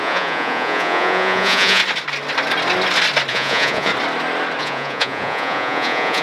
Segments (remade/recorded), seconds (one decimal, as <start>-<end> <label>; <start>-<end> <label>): 0.0-1.8 remade; 1.8-3.3 recorded; 3.3-3.9 remade; 3.9-4.6 recorded; 4.6-6.2 remade